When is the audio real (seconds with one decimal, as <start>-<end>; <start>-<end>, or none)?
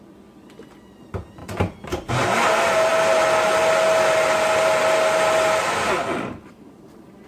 0.0-7.3